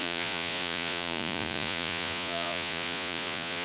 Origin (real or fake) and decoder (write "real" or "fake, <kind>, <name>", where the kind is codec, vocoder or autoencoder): fake, vocoder, Vocos